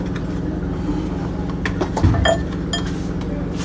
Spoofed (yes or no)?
no